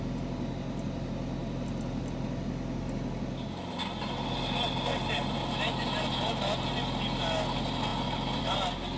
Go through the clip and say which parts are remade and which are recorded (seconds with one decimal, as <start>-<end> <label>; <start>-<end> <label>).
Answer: 0.0-9.0 recorded